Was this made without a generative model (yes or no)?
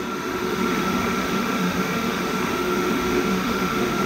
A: no